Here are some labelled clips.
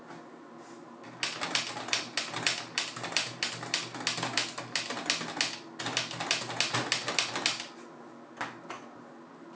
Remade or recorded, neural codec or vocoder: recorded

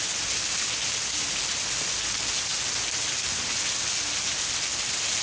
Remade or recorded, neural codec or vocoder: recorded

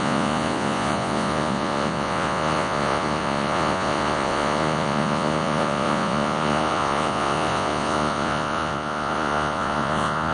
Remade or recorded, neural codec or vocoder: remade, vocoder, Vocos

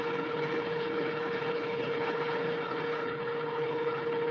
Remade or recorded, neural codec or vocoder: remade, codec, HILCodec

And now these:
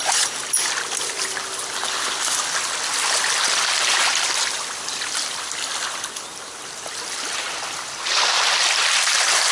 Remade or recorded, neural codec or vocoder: recorded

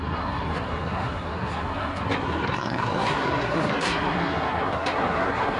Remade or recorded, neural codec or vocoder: remade, codec, SNAC